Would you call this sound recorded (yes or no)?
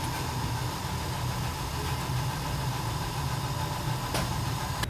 yes